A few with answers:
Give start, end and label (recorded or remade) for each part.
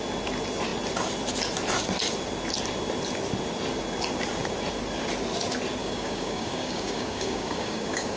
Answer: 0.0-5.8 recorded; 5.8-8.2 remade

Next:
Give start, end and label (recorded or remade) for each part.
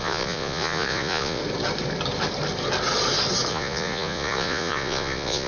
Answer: 0.0-1.4 remade; 1.4-3.5 recorded; 3.5-5.5 remade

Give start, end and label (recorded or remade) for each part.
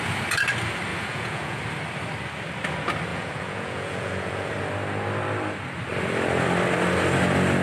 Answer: 0.0-0.9 recorded; 0.9-1.6 remade; 1.6-3.1 recorded; 3.1-4.5 remade; 4.5-7.6 recorded